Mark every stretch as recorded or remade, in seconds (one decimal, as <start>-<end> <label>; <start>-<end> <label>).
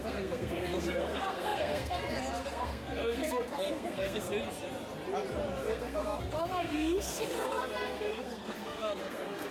0.0-4.3 remade; 4.3-5.6 recorded; 5.6-9.5 remade